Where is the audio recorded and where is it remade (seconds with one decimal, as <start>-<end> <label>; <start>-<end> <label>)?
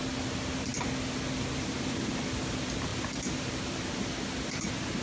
0.0-5.0 recorded